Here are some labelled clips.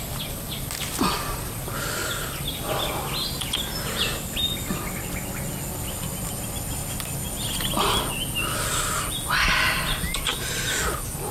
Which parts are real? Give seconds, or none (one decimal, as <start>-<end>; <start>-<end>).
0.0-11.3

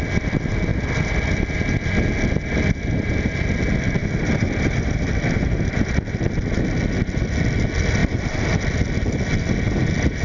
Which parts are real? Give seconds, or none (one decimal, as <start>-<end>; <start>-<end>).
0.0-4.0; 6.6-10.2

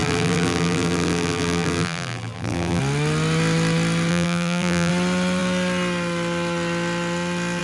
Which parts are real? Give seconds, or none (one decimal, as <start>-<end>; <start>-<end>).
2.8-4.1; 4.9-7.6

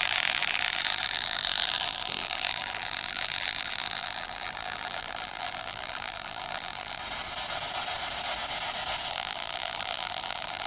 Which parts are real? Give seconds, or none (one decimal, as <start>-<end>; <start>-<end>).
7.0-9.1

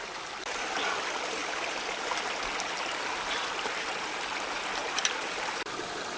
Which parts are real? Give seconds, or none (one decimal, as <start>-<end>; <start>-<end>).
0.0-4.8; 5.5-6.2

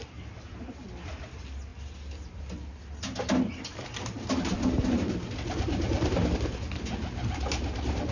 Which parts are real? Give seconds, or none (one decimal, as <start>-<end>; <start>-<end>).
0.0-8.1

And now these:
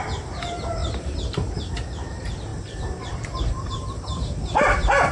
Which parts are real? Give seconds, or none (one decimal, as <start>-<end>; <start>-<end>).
none